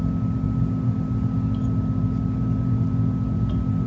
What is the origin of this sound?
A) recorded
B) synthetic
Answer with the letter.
A